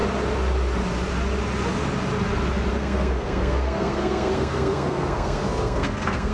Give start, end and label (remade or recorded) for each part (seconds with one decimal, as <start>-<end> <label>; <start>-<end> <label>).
0.0-2.7 recorded; 2.7-6.3 remade